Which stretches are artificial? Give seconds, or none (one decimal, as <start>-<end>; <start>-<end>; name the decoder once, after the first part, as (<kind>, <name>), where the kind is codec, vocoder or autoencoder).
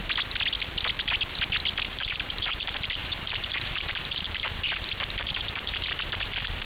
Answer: 1.9-6.6 (vocoder, BigVGAN v2)